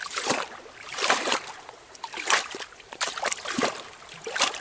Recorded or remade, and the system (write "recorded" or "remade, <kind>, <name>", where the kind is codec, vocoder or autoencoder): remade, vocoder, BigVGAN v2